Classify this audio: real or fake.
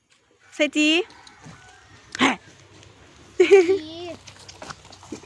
real